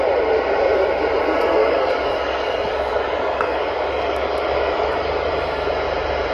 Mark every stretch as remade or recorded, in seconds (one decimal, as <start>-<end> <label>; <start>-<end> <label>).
0.0-1.6 recorded; 1.6-5.3 remade; 5.3-6.3 recorded